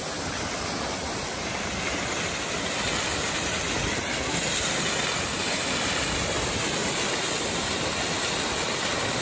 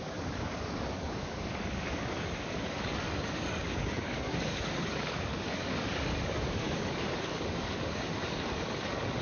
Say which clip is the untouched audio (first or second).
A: first